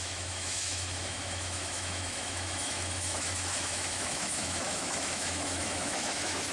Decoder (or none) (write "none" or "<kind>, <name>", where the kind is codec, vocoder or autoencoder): autoencoder, DAC-VAE